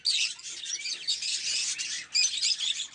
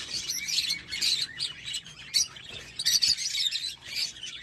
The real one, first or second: first